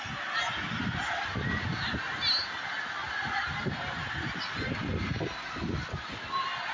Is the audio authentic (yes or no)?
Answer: yes